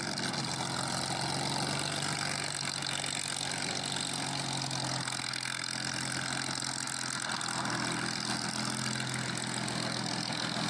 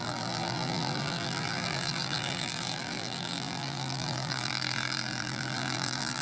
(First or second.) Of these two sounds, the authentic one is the first